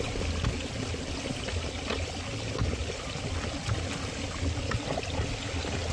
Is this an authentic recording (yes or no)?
yes